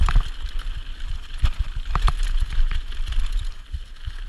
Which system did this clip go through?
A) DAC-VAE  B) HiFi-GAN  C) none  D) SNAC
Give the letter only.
C